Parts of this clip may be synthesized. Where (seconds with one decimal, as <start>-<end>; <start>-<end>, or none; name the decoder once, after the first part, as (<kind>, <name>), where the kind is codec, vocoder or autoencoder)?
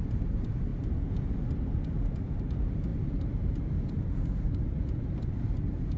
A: 0.0-0.7 (vocoder, BigVGAN v2); 2.1-6.0